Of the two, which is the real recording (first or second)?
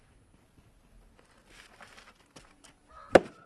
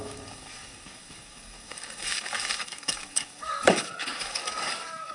first